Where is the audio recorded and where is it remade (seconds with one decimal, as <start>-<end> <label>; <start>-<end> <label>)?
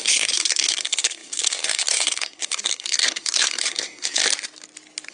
0.0-4.2 remade; 4.2-5.1 recorded